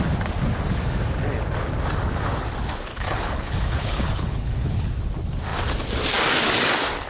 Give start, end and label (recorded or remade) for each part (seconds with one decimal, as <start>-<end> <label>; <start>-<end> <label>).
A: 0.0-2.9 recorded; 2.9-4.9 remade; 4.9-7.1 recorded